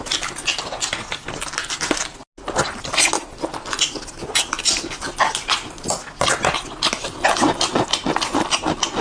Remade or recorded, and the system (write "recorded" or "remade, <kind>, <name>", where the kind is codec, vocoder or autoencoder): recorded